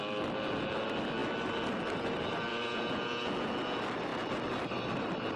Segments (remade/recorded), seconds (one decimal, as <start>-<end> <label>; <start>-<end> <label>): 0.0-2.5 recorded; 2.5-3.3 remade; 3.3-5.4 recorded